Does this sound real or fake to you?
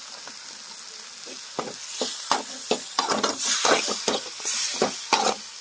real